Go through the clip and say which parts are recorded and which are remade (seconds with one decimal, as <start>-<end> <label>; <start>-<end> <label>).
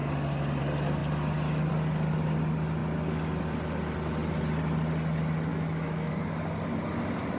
0.0-5.5 recorded; 5.5-6.1 remade; 6.1-7.4 recorded